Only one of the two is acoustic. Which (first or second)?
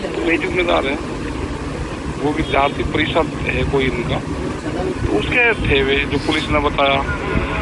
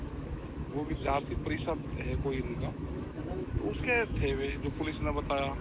first